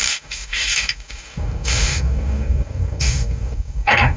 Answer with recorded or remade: remade